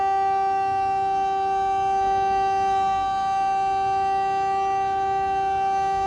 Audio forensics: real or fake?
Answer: real